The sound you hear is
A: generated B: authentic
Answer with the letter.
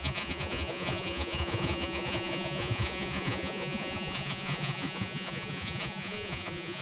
A